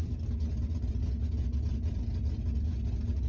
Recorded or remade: recorded